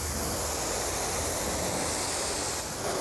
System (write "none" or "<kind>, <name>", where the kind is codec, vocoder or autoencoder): none